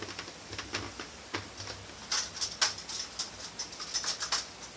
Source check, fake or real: real